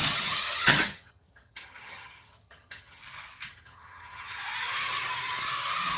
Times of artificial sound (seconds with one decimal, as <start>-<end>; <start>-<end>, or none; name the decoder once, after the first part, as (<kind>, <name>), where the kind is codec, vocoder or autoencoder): 0.0-3.0 (vocoder, HiFi-GAN); 3.5-4.4